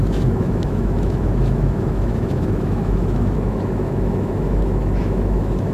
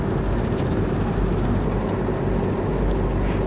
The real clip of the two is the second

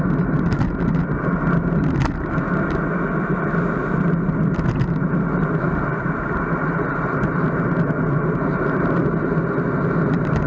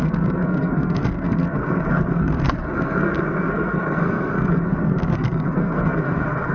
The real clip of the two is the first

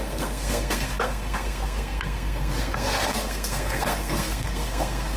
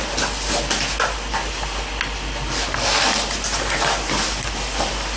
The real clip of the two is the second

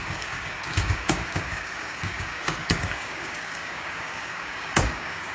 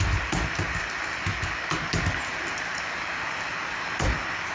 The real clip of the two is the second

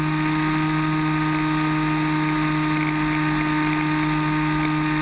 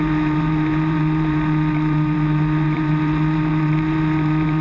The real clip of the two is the first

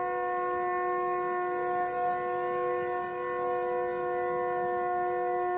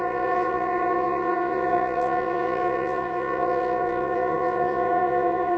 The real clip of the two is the first